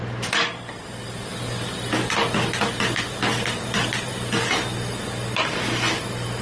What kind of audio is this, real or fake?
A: real